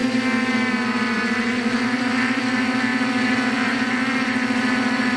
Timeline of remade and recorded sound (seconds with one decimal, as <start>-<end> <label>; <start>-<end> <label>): 0.0-0.7 recorded; 0.7-5.2 remade